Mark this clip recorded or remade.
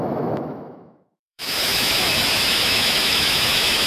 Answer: remade